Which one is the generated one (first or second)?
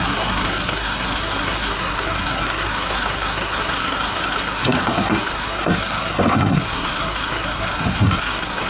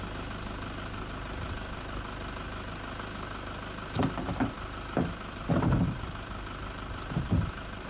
first